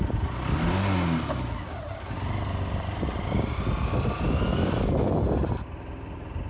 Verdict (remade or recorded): recorded